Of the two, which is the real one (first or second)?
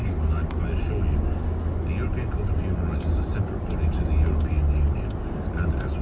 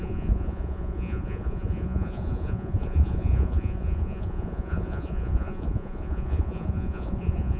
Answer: first